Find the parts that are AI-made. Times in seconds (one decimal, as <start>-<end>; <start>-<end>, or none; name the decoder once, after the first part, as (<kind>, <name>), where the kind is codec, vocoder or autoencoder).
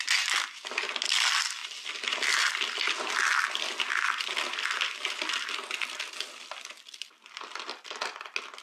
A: none